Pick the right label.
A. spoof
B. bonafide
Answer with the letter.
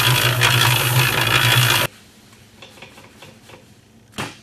B